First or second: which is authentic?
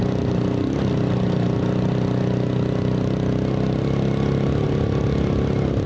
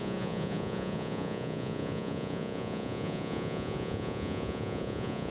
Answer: first